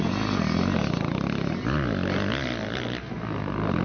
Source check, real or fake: real